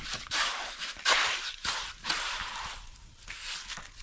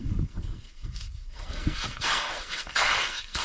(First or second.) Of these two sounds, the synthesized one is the second